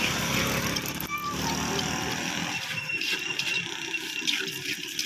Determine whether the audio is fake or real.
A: real